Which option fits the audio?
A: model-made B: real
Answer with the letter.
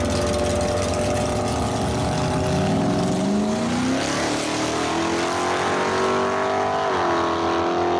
B